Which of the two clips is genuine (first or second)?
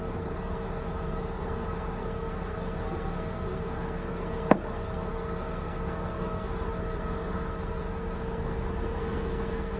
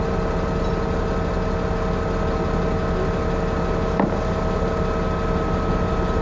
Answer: second